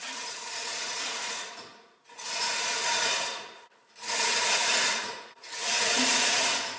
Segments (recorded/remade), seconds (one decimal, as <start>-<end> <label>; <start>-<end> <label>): 0.0-6.8 remade